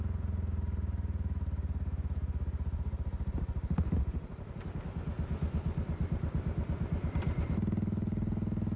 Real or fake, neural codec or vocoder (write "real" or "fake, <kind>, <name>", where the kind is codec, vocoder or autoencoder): real